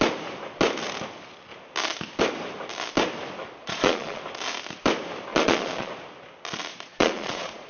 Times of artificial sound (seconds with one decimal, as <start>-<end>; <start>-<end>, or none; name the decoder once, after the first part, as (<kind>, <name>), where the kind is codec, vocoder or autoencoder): 3.6-4.2 (vocoder, Vocos); 5.3-5.9; 6.7-7.7